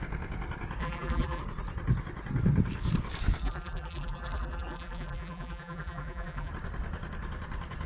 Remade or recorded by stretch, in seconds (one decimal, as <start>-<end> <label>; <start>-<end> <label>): 0.0-0.8 recorded; 0.8-1.4 remade; 1.4-3.4 recorded; 3.4-6.5 remade; 6.5-7.9 recorded